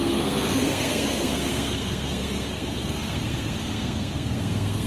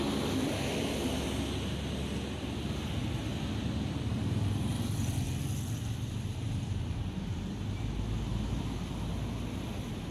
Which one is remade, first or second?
first